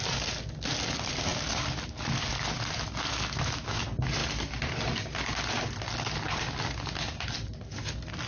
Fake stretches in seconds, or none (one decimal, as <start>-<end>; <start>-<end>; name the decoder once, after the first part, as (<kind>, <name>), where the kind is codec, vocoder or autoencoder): 3.1-3.8 (autoencoder, DAC-VAE)